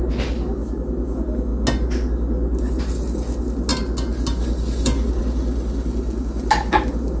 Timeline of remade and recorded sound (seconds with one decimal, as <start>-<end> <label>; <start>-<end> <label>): 0.0-7.2 recorded